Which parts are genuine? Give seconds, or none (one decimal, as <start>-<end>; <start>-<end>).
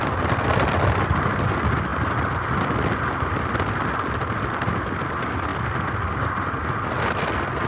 0.0-7.7